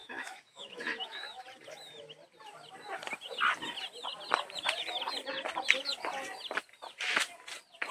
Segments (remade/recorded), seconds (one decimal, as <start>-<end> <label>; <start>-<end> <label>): 0.0-1.4 remade; 1.4-7.9 recorded